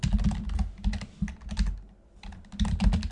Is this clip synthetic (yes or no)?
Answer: no